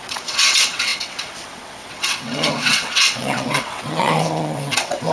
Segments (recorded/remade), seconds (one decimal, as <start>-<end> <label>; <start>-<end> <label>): 0.0-5.1 remade